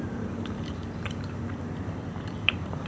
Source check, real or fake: fake